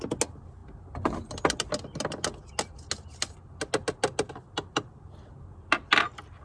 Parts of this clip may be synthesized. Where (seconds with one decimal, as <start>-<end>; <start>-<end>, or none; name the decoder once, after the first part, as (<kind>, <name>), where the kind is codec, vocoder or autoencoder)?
none